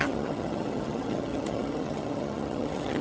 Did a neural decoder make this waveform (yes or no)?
yes